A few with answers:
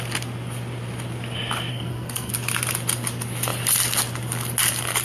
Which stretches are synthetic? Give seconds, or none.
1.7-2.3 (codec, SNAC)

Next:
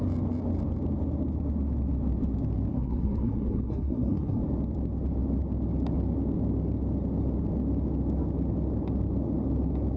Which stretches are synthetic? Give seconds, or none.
2.7-4.4 (codec, SNAC)

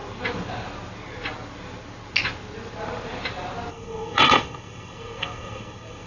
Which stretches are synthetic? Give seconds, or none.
3.7-6.1 (codec, SNAC)

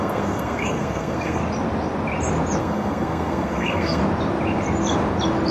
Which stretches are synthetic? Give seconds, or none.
0.0-1.4 (codec, SNAC); 2.6-4.0